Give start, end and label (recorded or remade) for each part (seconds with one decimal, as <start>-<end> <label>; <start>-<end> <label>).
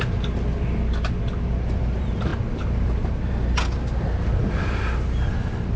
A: 0.0-5.8 recorded